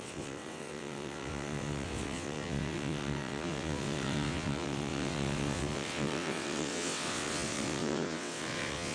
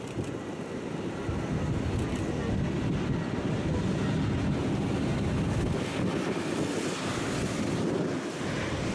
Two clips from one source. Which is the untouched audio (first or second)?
second